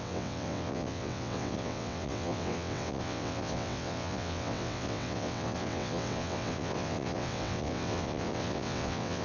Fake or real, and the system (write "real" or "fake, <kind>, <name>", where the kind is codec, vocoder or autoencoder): fake, vocoder, WaveNeXt